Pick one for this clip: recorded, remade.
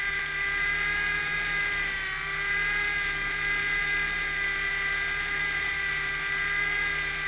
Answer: remade